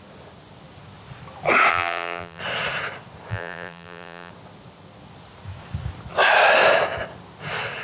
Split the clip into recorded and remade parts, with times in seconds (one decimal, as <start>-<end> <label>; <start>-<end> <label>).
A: 0.0-1.7 recorded; 1.7-2.4 remade; 2.4-3.3 recorded; 3.3-4.3 remade; 4.3-7.8 recorded